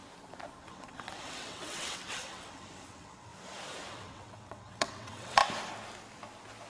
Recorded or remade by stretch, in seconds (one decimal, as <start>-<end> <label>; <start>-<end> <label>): 0.0-0.6 recorded; 0.6-3.3 remade; 3.3-3.9 recorded; 3.9-5.4 remade; 5.4-6.7 recorded